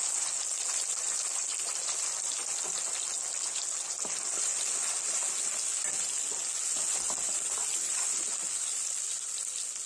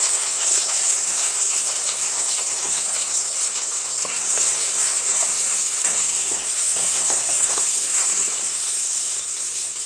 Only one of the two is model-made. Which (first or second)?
second